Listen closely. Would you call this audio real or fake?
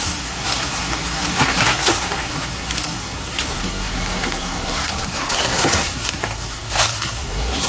fake